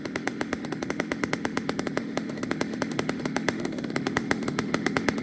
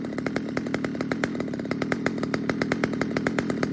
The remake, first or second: first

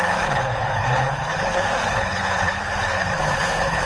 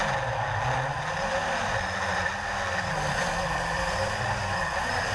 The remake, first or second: first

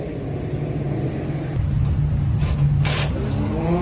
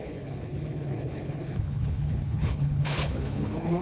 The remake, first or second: second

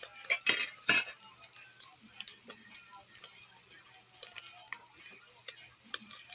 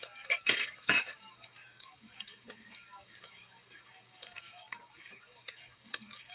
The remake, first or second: second